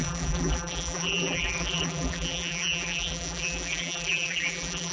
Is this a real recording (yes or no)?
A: no